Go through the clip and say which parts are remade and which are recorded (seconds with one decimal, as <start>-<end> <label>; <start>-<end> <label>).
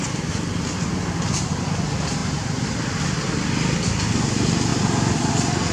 0.0-2.2 recorded; 2.2-3.0 remade; 3.0-4.7 recorded; 4.7-5.3 remade; 5.3-5.7 recorded